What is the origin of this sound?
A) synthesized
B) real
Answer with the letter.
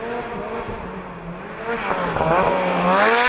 B